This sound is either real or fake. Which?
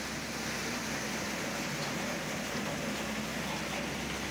real